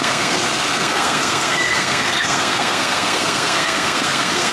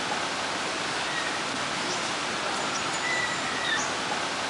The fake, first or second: first